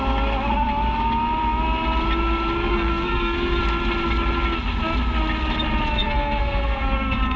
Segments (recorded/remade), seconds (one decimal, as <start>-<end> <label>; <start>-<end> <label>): 0.0-2.7 recorded; 2.7-3.6 remade; 3.6-6.0 recorded; 6.0-7.4 remade